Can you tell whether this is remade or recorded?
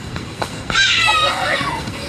remade